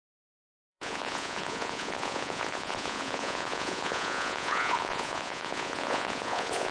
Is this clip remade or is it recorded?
remade